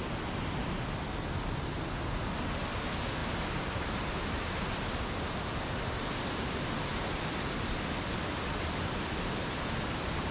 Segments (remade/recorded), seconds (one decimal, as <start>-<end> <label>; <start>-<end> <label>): 0.0-3.2 recorded; 3.2-4.5 remade; 4.5-6.9 recorded; 6.9-10.3 remade